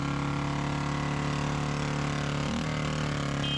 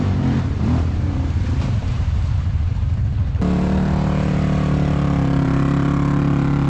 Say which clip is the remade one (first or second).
second